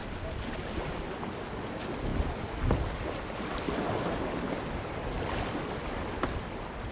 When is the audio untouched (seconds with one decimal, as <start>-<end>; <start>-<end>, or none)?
0.0-6.9